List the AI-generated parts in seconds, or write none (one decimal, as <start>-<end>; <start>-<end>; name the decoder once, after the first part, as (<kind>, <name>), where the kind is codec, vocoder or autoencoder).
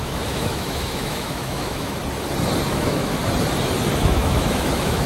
0.0-2.0 (autoencoder, DAC-VAE); 2.7-3.2; 4.0-5.1